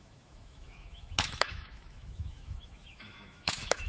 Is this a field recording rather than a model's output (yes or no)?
no